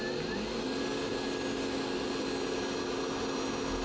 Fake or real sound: real